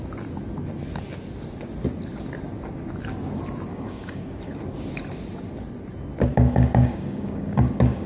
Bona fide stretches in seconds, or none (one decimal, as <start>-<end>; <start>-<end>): 0.0-3.7; 4.6-6.3